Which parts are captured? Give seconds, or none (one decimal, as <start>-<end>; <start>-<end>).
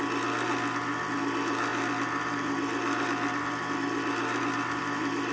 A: 0.0-5.3